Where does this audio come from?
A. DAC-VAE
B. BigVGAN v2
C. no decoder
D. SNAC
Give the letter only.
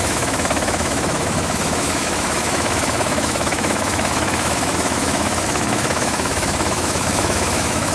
A